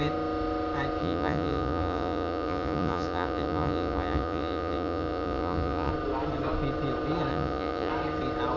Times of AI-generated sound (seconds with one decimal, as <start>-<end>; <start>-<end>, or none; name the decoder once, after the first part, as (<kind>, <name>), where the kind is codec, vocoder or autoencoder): 1.0-5.9 (vocoder, Vocos); 7.3-7.9